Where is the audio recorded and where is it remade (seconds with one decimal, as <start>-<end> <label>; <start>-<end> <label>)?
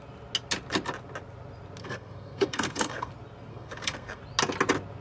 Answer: 0.0-1.8 recorded; 1.8-3.1 remade; 3.1-3.5 recorded; 3.5-4.2 remade; 4.2-5.0 recorded